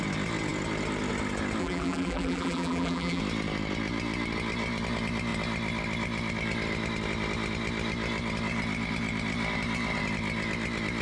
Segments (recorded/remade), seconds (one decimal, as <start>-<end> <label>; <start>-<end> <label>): 0.0-1.6 recorded; 1.6-3.2 remade; 3.2-11.0 recorded